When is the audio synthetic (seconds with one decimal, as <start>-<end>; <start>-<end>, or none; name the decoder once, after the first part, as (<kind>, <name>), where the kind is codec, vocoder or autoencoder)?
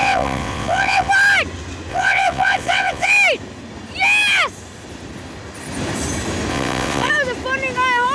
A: 0.0-1.1 (vocoder, WaveNeXt); 1.9-3.1; 6.5-7.1